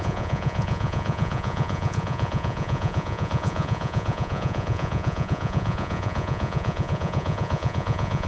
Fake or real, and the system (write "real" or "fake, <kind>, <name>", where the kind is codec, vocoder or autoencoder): fake, vocoder, Vocos